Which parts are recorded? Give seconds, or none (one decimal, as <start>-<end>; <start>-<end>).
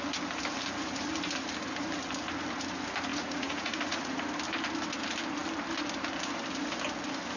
0.0-3.1; 4.3-7.4